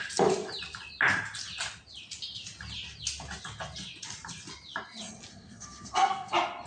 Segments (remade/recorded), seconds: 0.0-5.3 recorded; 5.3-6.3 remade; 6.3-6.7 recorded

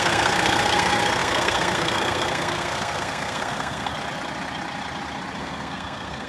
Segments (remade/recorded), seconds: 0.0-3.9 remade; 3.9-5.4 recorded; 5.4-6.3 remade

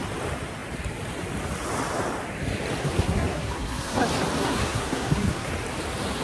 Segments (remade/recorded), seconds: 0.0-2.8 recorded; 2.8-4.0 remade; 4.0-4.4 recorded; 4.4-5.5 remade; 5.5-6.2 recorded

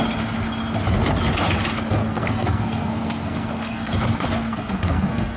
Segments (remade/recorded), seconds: 0.0-2.0 recorded; 2.0-5.4 remade

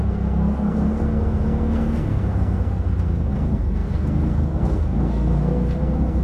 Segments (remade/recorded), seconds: 0.0-6.2 remade